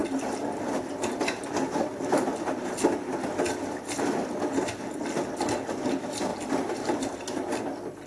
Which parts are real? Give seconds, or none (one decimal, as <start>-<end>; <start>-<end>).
0.0-8.1